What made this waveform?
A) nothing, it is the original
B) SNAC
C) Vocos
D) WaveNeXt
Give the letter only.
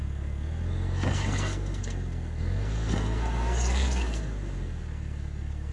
B